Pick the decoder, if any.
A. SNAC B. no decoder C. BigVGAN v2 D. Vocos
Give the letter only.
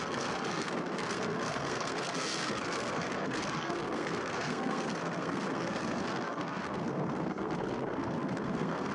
A